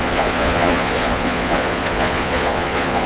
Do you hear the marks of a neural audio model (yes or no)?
yes